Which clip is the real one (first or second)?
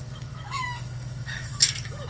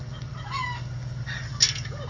second